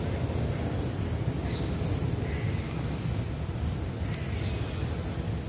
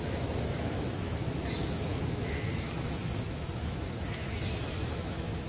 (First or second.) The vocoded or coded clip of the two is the second